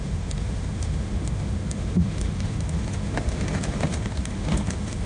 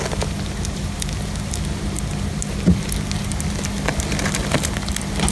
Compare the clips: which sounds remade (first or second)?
first